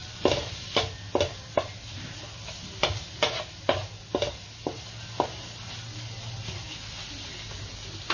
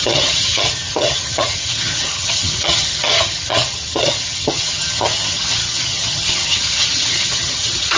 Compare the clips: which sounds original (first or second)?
first